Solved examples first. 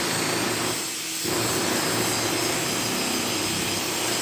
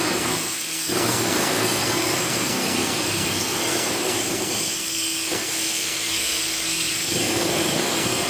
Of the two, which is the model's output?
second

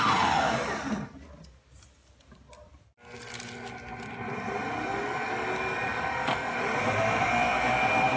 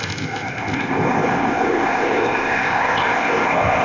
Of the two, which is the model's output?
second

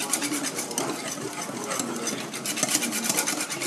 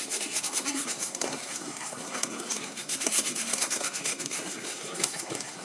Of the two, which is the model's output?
second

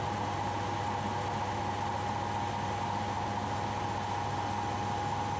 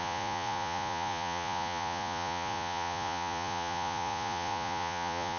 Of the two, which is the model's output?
second